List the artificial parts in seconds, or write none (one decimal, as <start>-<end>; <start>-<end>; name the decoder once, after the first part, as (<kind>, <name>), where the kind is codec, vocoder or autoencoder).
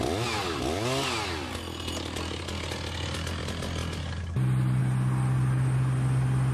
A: none